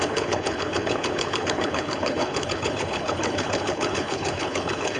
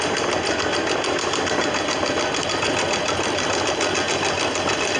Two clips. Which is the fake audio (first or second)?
first